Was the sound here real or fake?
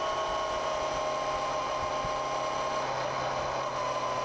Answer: real